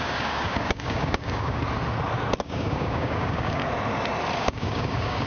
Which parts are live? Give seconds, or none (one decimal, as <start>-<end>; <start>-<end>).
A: 1.6-2.4; 3.6-4.4